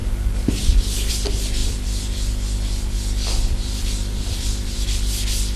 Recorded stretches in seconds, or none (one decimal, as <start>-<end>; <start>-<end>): 0.0-1.6; 5.0-5.6